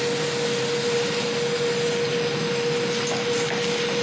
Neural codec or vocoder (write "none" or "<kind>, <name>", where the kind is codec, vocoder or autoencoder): none